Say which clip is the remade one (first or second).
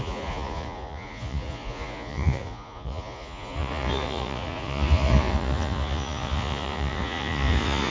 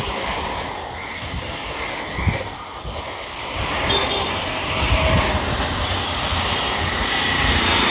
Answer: first